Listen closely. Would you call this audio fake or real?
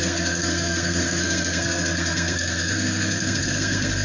fake